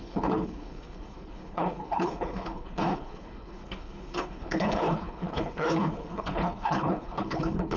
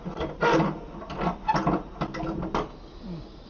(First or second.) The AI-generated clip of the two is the first